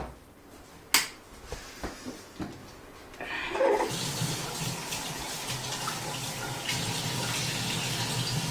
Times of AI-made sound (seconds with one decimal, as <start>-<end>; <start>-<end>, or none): none